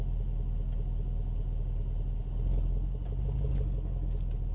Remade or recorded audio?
recorded